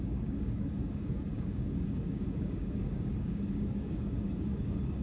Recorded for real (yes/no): no